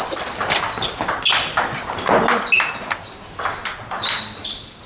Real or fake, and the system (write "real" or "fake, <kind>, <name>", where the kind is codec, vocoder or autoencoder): real